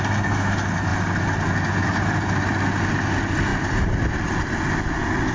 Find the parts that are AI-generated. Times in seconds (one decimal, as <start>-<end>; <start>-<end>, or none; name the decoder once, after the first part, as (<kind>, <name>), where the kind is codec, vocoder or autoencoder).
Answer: none